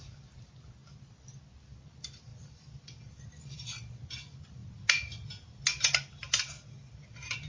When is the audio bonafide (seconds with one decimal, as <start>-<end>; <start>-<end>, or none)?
0.0-0.8; 1.4-2.3; 3.8-7.5